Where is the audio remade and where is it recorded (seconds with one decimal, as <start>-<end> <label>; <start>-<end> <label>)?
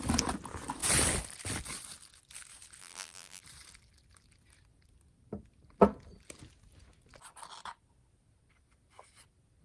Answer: 0.0-2.8 recorded; 2.8-3.4 remade; 3.4-9.6 recorded